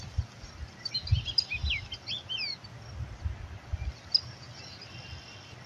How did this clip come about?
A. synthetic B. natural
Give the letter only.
B